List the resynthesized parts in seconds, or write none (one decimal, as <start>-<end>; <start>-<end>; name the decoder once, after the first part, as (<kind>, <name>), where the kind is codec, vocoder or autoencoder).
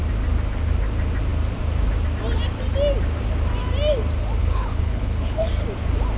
4.4-5.5 (codec, HILCodec)